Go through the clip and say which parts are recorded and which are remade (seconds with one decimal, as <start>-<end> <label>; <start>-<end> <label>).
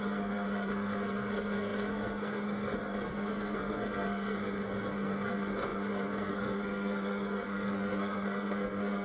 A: 0.0-9.0 remade